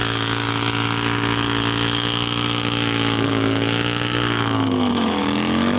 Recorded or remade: remade